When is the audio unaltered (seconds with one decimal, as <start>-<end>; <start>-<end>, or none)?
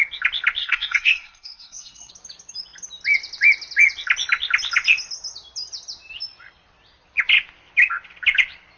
0.0-0.6; 2.1-8.8